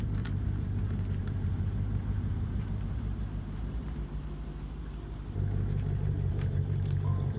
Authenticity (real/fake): fake